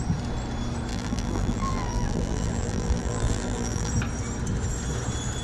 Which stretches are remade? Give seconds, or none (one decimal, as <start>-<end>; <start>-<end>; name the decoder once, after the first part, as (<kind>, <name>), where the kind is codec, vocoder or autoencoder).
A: 0.9-3.9 (vocoder, BigVGAN v2)